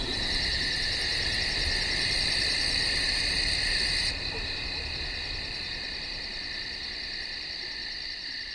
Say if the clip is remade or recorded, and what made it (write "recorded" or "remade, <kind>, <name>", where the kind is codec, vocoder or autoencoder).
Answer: recorded